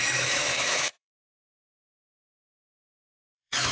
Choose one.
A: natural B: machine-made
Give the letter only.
B